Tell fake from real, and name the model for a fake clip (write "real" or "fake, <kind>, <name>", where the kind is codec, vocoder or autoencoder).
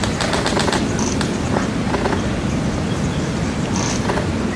real